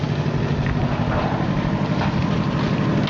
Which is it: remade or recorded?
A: recorded